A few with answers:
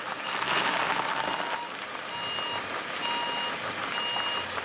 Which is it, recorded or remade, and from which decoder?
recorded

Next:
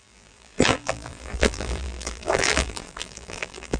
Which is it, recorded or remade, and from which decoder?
remade, vocoder, BigVGAN v2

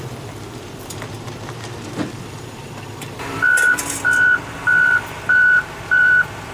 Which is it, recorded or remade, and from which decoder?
remade, vocoder, BigVGAN v2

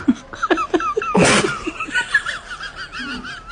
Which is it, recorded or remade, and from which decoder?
recorded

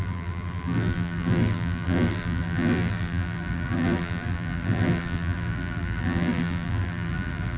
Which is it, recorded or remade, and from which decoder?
remade, vocoder, BigVGAN v2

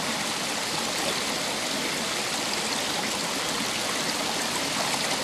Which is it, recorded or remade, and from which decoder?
recorded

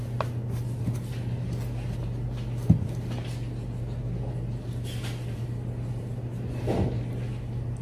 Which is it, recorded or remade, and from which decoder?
recorded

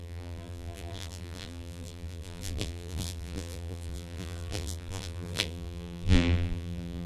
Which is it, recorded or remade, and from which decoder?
remade, vocoder, BigVGAN v2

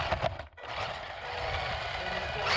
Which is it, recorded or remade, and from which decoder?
recorded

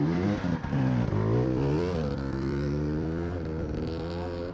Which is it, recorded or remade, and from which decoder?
remade, vocoder, BigVGAN v2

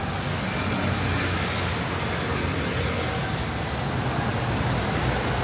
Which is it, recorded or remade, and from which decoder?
recorded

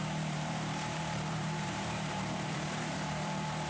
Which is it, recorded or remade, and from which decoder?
remade, vocoder, BigVGAN v2